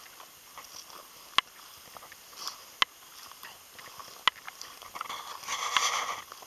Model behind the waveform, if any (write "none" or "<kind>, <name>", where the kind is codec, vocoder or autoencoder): none